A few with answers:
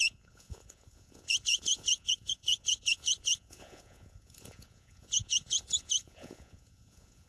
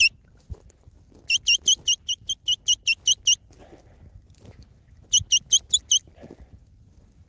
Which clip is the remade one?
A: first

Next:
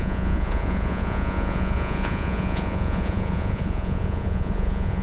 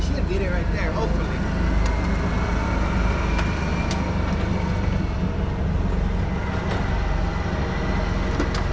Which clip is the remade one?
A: first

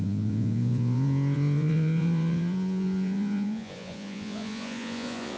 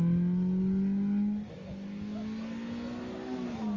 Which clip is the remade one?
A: first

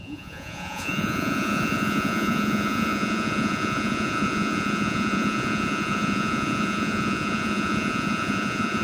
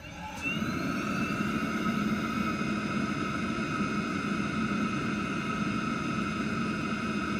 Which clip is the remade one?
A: first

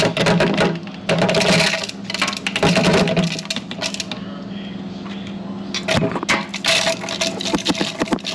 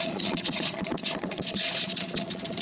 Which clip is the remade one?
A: second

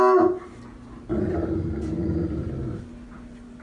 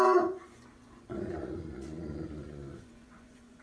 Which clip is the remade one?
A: second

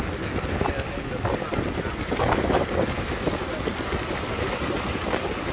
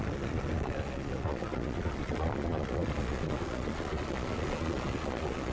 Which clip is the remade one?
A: second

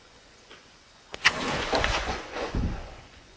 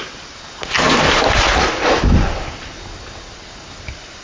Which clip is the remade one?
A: first